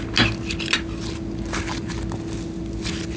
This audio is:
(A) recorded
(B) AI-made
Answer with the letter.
A